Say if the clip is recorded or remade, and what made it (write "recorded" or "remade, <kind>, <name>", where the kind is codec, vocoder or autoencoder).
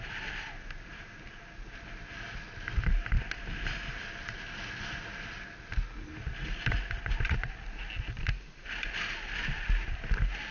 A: recorded